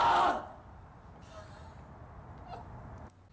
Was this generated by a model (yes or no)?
no